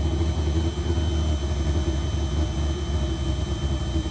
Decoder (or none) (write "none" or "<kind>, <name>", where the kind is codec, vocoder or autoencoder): none